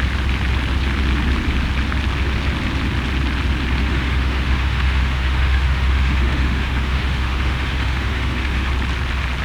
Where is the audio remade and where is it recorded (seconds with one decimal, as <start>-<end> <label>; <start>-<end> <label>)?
0.0-3.8 recorded; 3.8-8.7 remade; 8.7-9.4 recorded